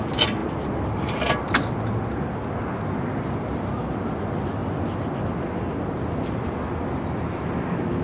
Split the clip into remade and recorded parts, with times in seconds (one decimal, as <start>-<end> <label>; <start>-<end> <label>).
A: 0.0-8.0 recorded